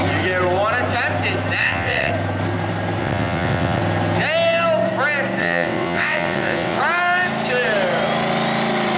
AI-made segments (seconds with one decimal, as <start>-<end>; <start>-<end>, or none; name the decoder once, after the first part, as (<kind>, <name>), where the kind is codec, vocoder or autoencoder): 1.6-2.1 (vocoder, WaveNeXt); 3.0-3.8; 5.4-6.8